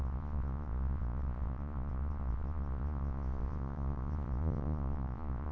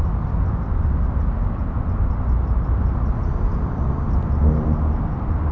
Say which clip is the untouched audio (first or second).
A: second